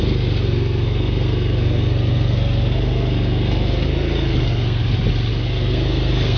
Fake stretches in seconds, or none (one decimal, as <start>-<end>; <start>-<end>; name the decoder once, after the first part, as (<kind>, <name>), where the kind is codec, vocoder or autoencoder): 0.0-4.8 (codec, SNAC); 5.3-6.4